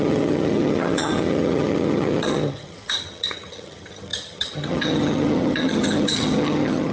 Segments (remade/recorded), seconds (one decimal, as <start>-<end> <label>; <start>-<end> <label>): 0.0-6.9 remade